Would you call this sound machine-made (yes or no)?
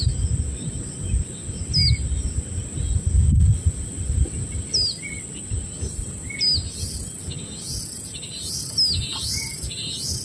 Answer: no